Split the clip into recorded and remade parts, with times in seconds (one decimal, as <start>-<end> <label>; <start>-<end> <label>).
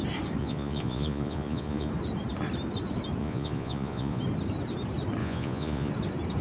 0.0-0.4 recorded; 0.4-1.9 remade; 1.9-3.2 recorded; 3.2-4.2 remade; 4.2-5.2 recorded; 5.2-5.9 remade; 5.9-6.4 recorded